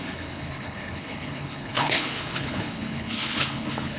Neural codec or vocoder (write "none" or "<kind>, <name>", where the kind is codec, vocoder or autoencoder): codec, HILCodec